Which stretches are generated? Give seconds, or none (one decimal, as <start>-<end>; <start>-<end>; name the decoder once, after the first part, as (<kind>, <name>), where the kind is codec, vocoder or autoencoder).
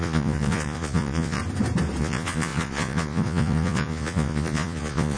0.0-1.4 (vocoder, Vocos); 2.0-5.2